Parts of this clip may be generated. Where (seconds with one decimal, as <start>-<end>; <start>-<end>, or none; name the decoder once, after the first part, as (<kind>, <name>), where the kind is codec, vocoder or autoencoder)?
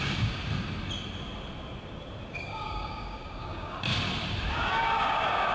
0.0-0.4 (codec, DAC); 2.3-3.9; 4.5-5.5